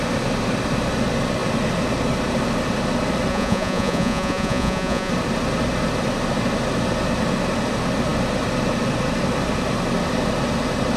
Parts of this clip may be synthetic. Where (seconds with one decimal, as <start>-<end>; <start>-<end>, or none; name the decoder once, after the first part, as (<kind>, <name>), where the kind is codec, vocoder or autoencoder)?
3.3-5.1 (vocoder, Vocos)